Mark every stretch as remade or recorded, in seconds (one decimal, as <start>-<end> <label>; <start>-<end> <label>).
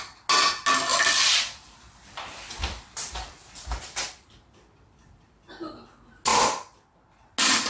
0.0-0.9 recorded; 0.9-5.5 remade; 5.5-7.7 recorded